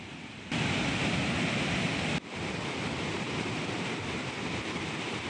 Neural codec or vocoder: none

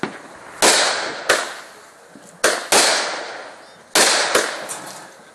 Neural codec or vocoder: none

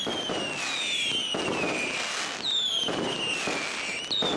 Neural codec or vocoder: none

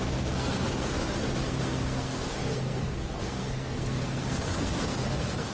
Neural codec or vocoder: codec, SNAC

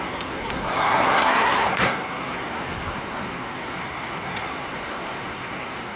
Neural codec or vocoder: codec, SNAC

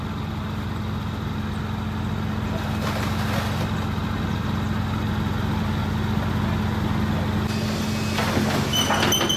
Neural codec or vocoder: none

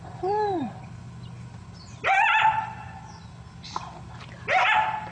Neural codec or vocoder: none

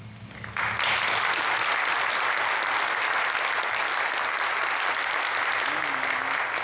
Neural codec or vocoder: none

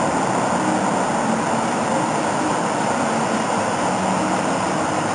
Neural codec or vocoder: none